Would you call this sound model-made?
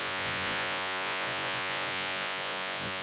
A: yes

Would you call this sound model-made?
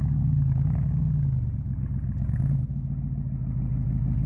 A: no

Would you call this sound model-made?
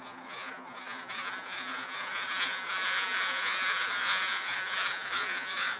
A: yes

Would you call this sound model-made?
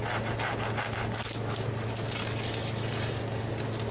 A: no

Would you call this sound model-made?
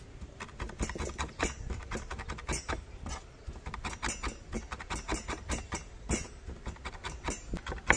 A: no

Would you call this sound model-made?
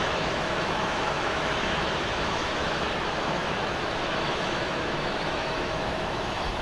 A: yes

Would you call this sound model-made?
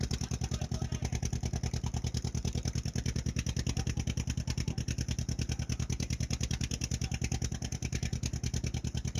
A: no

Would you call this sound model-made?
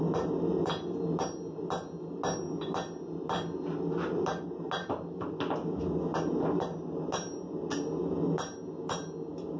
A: no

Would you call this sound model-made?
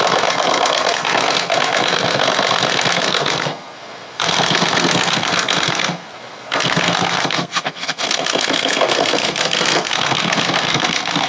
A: yes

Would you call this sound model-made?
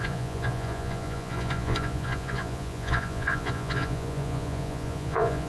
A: yes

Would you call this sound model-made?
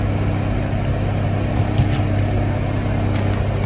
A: no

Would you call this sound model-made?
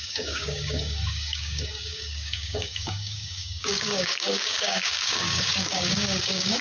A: yes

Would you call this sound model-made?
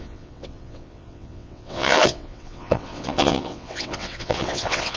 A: yes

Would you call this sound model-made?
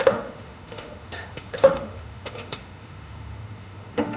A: yes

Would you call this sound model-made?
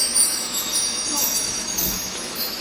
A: yes